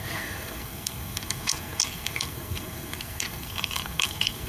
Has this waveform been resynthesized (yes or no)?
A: yes